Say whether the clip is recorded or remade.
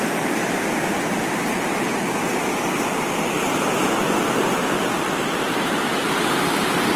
recorded